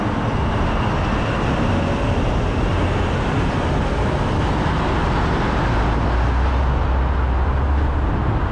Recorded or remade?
recorded